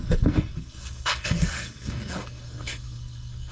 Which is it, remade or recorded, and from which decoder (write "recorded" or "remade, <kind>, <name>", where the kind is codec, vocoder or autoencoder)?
remade, codec, SNAC